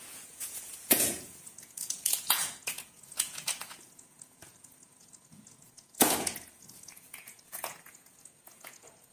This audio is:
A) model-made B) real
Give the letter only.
A